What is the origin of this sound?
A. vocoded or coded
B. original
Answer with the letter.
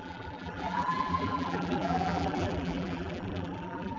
A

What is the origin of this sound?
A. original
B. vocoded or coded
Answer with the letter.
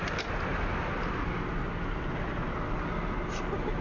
A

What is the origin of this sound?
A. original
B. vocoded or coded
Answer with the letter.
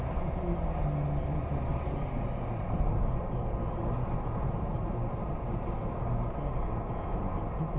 A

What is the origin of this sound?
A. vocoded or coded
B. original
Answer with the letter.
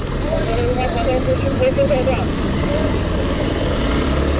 B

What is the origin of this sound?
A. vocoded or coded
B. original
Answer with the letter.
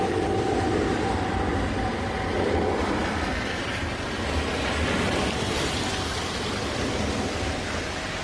A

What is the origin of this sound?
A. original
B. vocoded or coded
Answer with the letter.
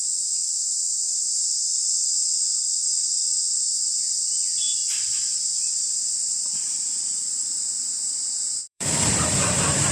B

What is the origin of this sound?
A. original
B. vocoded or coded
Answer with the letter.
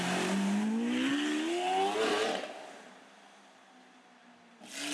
A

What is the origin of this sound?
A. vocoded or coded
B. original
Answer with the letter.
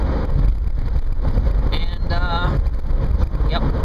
B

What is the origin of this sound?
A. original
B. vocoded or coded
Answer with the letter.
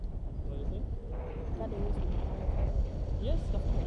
A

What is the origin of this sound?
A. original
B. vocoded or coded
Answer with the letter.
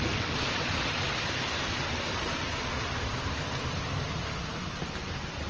A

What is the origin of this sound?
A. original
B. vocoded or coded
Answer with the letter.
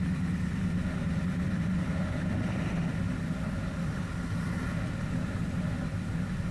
A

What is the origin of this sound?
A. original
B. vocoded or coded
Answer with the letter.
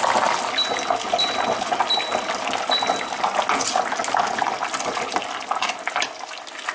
A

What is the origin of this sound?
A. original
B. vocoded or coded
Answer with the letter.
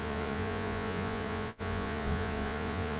B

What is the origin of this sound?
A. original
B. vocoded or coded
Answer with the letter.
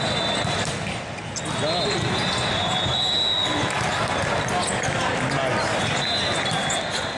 A